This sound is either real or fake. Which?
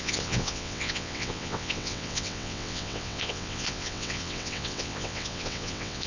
fake